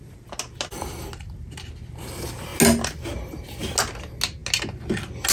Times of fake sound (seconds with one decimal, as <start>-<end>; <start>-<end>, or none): none